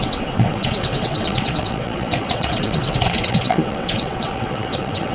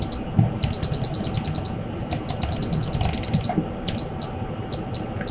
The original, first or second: second